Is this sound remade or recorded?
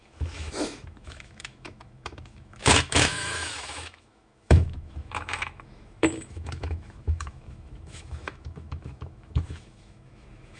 remade